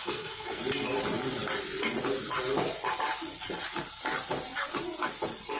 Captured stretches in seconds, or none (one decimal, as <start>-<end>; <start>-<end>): 0.6-5.6